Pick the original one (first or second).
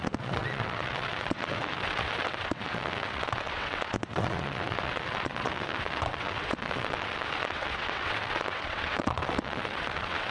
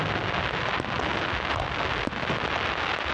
second